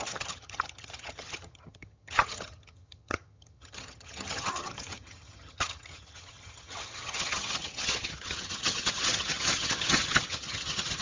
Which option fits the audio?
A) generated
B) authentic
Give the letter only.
A